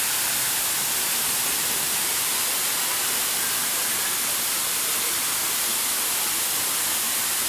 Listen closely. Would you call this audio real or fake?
real